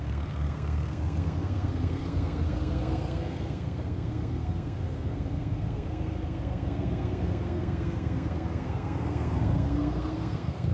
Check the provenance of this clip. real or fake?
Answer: fake